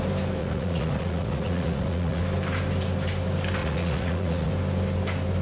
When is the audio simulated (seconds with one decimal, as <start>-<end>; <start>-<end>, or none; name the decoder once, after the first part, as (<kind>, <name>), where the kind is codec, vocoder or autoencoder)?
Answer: 0.4-2.2 (vocoder, Vocos); 3.6-4.5